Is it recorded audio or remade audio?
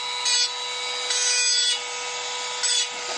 recorded